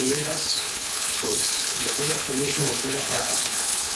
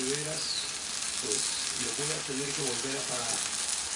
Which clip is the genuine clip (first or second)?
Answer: second